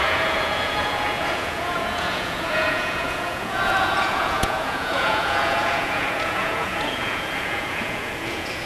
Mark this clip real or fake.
fake